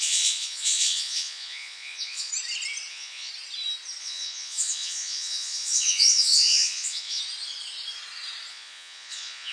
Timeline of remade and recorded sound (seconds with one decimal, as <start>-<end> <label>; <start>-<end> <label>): 0.0-2.3 remade; 2.3-2.9 recorded; 2.9-3.3 remade; 3.3-4.0 recorded; 4.0-7.2 remade; 7.2-8.5 recorded; 8.5-9.5 remade